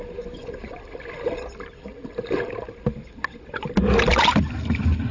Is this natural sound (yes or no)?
yes